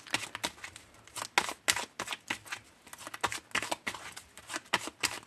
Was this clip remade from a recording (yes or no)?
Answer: no